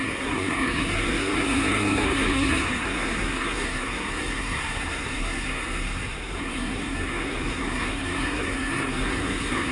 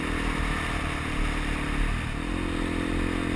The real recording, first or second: second